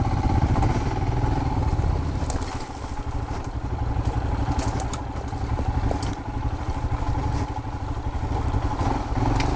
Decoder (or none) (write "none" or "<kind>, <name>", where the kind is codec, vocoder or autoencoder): none